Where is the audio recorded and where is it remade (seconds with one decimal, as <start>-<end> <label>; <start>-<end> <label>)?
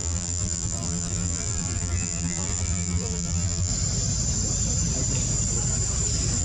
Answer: 0.0-3.7 remade; 3.7-6.4 recorded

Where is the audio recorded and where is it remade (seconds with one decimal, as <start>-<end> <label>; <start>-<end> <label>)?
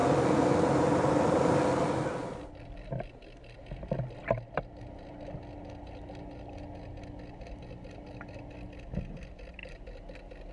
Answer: 0.0-10.5 recorded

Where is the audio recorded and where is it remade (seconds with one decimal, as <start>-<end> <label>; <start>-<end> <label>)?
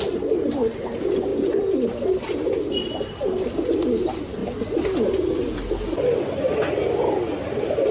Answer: 0.0-7.9 recorded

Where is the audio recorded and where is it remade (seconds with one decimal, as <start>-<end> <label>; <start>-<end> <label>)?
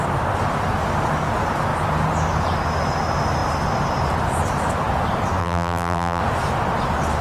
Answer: 0.0-5.4 recorded; 5.4-6.2 remade; 6.2-7.2 recorded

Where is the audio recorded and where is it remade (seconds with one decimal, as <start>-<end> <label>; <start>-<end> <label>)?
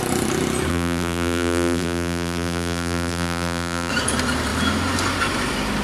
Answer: 0.0-0.7 recorded; 0.7-3.9 remade; 3.9-5.8 recorded